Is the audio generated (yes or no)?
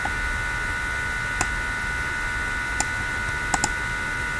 no